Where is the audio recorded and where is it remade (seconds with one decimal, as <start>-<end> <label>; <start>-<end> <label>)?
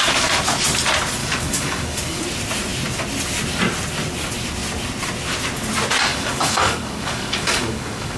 0.0-1.2 recorded; 1.2-2.2 remade; 2.2-6.1 recorded; 6.1-8.2 remade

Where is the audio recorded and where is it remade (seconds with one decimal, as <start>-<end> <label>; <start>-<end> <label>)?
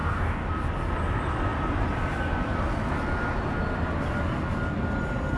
0.0-0.5 remade; 0.5-5.4 recorded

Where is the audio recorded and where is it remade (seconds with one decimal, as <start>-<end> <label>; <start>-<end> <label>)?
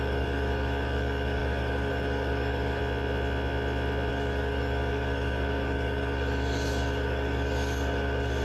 0.0-2.8 remade; 2.8-4.1 recorded; 4.1-8.4 remade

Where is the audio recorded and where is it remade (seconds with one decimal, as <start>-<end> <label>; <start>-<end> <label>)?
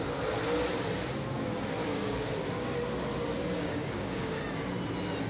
0.0-1.8 recorded; 1.8-2.3 remade; 2.3-3.5 recorded; 3.5-4.4 remade; 4.4-5.3 recorded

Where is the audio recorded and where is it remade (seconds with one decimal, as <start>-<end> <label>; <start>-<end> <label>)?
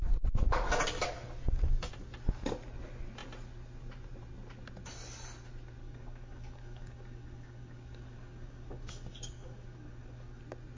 0.0-5.8 recorded; 5.8-10.4 remade; 10.4-10.8 recorded